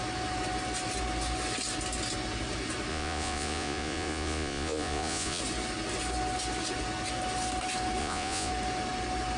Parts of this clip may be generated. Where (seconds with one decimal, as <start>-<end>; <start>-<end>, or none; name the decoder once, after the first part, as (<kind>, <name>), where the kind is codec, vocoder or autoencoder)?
2.9-5.4 (vocoder, Vocos); 8.0-8.5